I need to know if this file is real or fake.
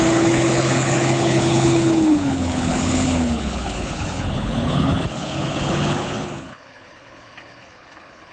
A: fake